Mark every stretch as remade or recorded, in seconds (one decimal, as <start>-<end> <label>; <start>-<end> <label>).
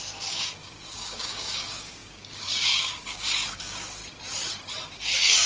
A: 0.0-4.0 remade; 4.0-4.9 recorded; 4.9-5.5 remade